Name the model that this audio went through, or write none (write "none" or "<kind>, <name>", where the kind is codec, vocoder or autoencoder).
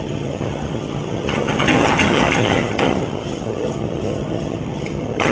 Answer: vocoder, HiFi-GAN